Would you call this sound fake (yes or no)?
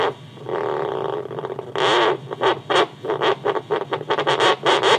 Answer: no